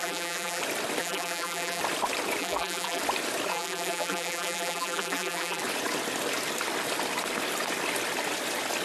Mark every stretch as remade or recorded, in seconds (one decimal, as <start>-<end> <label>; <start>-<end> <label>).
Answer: 0.0-0.6 remade; 0.6-1.0 recorded; 1.0-1.8 remade; 1.8-2.4 recorded; 2.4-3.0 remade; 3.0-3.5 recorded; 3.5-5.6 remade; 5.6-8.8 recorded